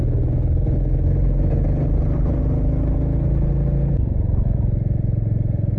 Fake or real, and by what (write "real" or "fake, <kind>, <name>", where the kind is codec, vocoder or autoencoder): real